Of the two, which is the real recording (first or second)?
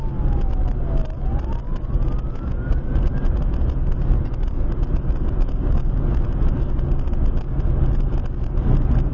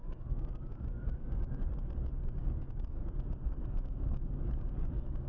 first